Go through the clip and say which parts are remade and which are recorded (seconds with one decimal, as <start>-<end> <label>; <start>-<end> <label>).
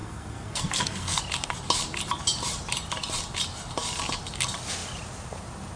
0.0-1.2 remade; 1.2-5.8 recorded